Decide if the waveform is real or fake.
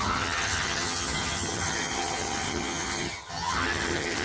fake